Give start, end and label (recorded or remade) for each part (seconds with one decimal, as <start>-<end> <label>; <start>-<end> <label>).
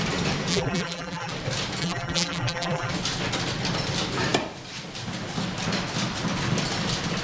0.0-0.5 recorded; 0.5-1.3 remade; 1.3-1.8 recorded; 1.8-2.9 remade; 2.9-7.2 recorded